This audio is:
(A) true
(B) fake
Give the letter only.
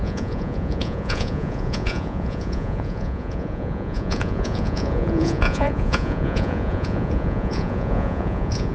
B